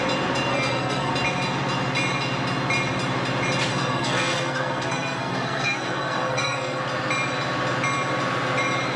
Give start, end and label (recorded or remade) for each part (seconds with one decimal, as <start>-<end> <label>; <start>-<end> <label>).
0.0-0.5 recorded; 0.5-1.1 remade; 1.1-3.7 recorded; 3.7-6.8 remade; 6.8-9.0 recorded